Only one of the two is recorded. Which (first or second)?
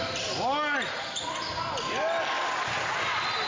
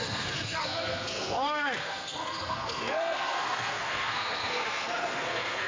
first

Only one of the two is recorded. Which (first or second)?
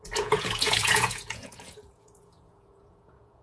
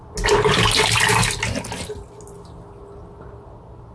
second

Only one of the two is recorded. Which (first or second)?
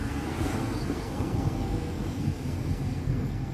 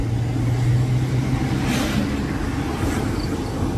second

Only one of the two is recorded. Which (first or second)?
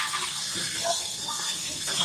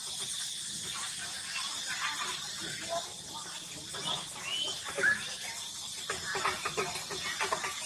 second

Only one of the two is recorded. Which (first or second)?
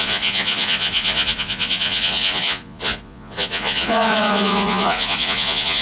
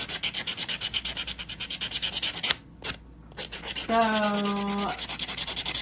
second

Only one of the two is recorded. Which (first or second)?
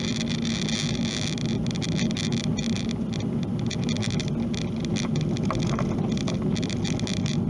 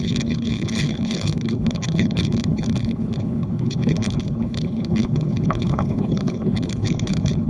first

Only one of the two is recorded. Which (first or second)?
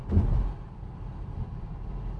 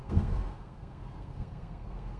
first